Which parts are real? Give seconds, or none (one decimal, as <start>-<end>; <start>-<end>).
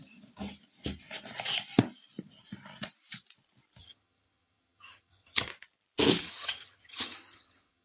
0.0-3.8; 5.5-6.2